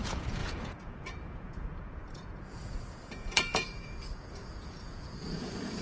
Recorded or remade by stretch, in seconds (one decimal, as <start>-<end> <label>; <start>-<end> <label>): 0.0-5.8 remade